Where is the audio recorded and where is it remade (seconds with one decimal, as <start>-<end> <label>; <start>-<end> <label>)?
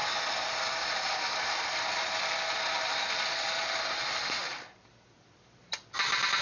0.0-3.8 remade; 3.8-4.4 recorded; 4.4-5.7 remade; 5.7-6.4 recorded